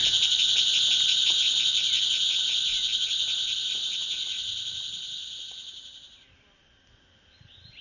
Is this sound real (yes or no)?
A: yes